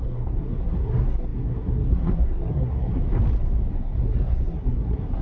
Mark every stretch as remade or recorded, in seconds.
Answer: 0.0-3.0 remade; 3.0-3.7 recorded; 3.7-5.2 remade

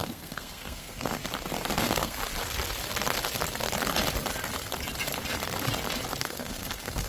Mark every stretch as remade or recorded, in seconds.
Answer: 0.0-1.2 remade; 1.2-1.8 recorded; 1.8-2.2 remade; 2.2-6.2 recorded; 6.2-7.1 remade

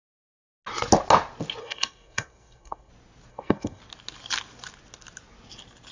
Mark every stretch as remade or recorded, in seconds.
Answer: 0.0-1.6 recorded; 1.6-2.9 remade; 2.9-3.3 recorded; 3.3-3.8 remade; 3.8-5.9 recorded

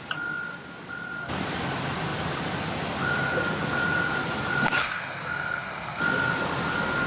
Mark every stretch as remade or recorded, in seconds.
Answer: 0.0-4.8 recorded; 4.8-6.0 remade; 6.0-7.1 recorded

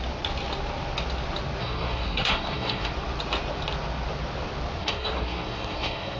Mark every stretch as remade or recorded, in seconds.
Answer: 0.0-1.6 recorded; 1.6-2.9 remade; 2.9-4.8 recorded; 4.8-6.2 remade

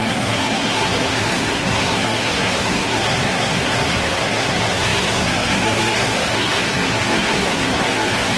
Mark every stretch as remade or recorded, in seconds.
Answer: 0.0-8.4 remade

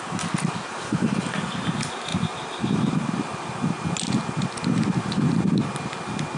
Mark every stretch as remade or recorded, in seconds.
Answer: 0.0-6.4 recorded

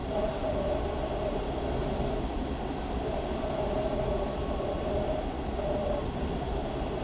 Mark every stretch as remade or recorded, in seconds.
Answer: 0.0-7.0 recorded